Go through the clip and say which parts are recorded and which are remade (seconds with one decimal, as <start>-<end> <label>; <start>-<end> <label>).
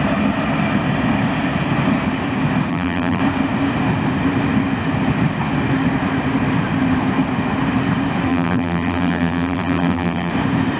0.0-2.7 recorded; 2.7-3.2 remade; 3.2-8.3 recorded; 8.3-10.3 remade; 10.3-10.8 recorded